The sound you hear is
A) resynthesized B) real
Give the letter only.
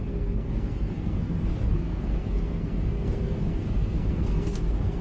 A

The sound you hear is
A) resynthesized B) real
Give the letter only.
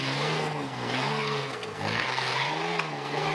A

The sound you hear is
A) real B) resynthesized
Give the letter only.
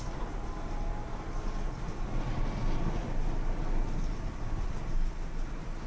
A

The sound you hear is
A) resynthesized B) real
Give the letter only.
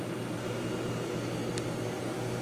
B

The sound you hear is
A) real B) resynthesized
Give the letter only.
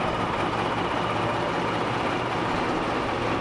A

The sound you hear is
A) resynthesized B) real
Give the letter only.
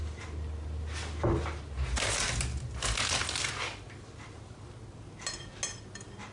B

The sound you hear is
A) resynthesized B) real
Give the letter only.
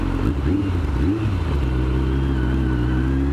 B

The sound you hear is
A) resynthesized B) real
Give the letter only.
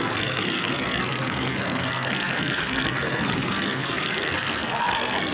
A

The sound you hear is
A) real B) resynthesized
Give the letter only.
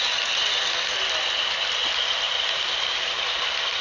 A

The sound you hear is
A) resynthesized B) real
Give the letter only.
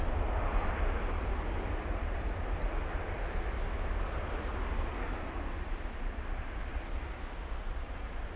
B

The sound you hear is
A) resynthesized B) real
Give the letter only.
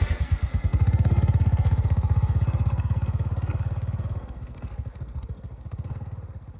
A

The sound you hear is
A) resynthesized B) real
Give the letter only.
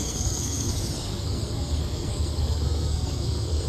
A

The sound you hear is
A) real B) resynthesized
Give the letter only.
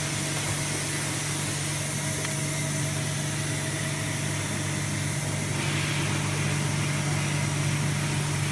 A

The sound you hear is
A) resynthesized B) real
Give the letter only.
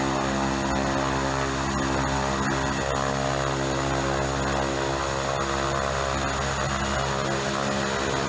B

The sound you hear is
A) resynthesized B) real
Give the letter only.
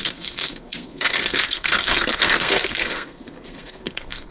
A